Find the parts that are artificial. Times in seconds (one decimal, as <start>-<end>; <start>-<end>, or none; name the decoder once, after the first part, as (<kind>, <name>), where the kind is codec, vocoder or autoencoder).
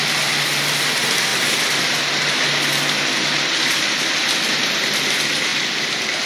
0.0-1.3 (vocoder, BigVGAN v2); 1.8-6.3